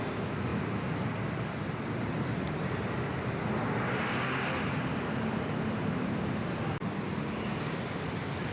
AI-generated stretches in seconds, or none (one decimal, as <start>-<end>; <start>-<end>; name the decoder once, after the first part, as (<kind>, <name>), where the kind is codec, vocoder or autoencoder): none